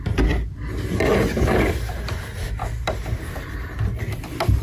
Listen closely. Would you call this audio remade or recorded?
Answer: recorded